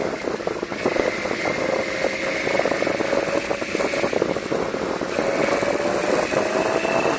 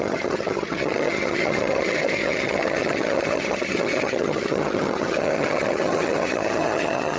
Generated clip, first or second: second